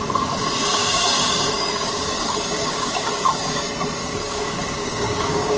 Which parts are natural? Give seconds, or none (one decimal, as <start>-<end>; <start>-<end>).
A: 0.0-0.6; 3.3-4.0